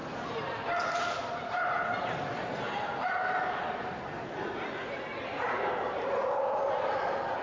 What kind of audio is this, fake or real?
real